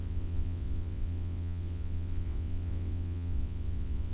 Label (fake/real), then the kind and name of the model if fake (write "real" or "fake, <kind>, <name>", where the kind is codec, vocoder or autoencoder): fake, vocoder, WaveNeXt